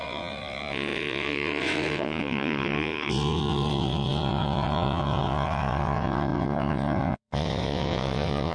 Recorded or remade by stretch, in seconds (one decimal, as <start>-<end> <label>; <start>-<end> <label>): 0.0-8.5 remade